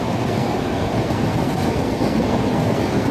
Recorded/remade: remade